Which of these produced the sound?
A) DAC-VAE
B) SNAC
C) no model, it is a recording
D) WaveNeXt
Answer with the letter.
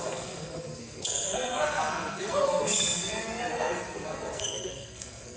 B